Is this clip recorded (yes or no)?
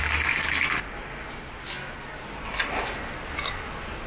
yes